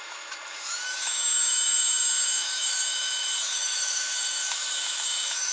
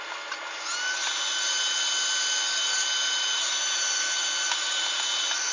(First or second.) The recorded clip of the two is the second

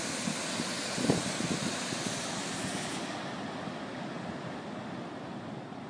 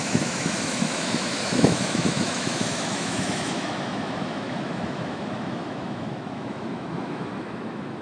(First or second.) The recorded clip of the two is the first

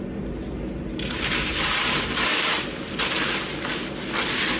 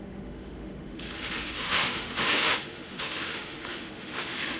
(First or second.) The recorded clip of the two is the first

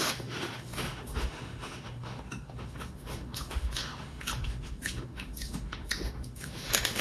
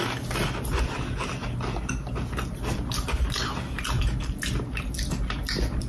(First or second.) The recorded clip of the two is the second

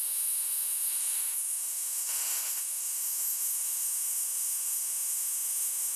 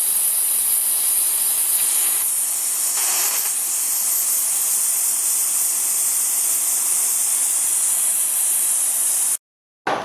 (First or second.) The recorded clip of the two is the second